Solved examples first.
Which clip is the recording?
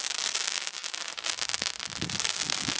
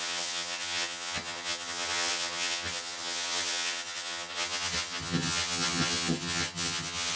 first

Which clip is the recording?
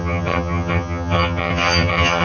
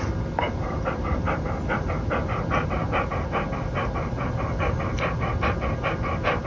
second